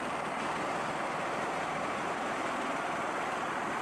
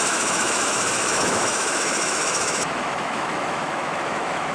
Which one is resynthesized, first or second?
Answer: second